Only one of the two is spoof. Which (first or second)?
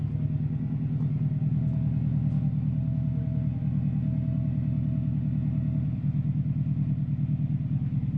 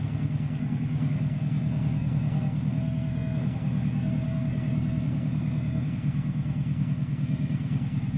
second